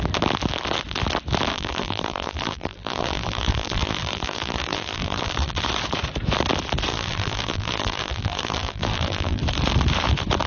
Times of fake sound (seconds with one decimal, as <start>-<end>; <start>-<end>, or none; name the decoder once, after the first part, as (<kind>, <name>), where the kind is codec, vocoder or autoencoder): 1.5-5.6 (vocoder, BigVGAN v2); 6.9-9.4